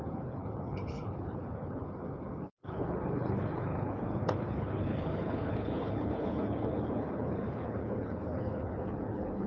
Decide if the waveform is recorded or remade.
remade